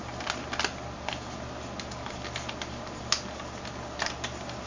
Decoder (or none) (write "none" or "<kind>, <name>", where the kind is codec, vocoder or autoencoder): none